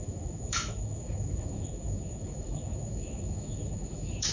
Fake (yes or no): yes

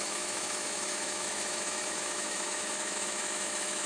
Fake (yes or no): yes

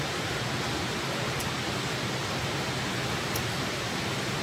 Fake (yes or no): no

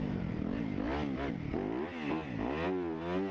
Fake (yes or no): no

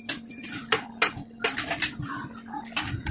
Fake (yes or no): no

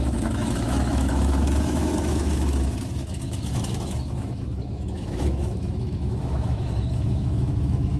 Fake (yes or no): yes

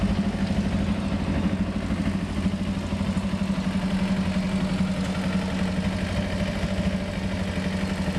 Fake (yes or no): no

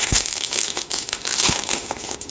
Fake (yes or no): yes